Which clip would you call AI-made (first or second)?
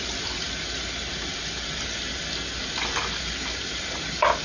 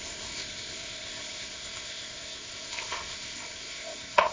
second